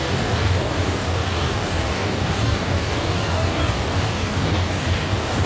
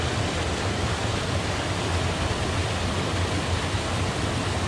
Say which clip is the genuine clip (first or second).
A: second